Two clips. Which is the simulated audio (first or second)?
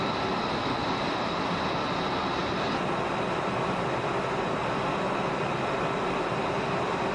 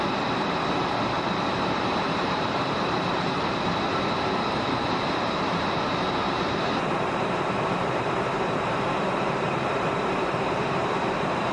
second